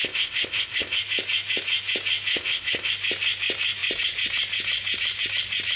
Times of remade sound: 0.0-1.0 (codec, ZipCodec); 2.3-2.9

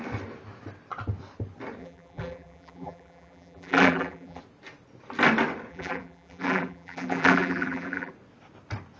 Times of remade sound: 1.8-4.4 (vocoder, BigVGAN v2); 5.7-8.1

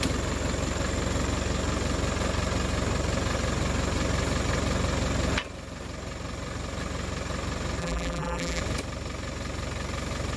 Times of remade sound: 7.8-8.6 (vocoder, BigVGAN v2)